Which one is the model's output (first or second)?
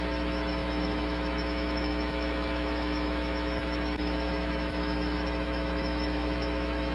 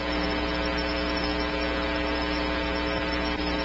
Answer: first